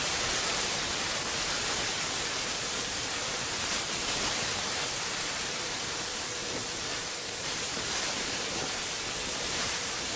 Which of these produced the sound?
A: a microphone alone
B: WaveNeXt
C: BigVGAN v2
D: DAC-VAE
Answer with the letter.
C